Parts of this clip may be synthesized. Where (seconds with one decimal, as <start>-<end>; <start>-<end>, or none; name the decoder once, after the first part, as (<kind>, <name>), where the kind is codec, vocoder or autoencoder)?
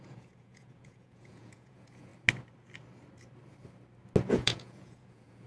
0.0-2.1 (vocoder, Vocos); 4.3-5.5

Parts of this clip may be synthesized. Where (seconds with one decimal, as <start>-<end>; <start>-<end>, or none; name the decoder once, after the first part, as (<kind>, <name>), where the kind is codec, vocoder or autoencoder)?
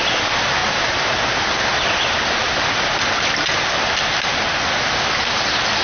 0.6-3.8 (vocoder, BigVGAN v2); 4.3-5.2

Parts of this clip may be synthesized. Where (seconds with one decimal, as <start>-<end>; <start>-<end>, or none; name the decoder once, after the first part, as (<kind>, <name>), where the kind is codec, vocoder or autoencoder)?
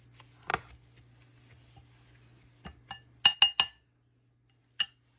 none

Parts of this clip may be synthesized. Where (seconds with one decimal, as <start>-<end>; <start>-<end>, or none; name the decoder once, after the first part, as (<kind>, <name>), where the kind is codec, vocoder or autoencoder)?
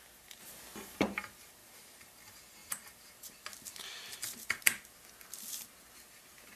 1.6-2.2 (vocoder, BigVGAN v2); 2.6-3.3